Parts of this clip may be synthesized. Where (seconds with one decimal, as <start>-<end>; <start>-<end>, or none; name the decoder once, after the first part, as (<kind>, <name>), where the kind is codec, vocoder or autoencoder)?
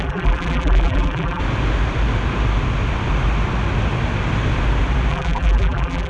0.0-1.4 (vocoder, BigVGAN v2); 5.1-6.1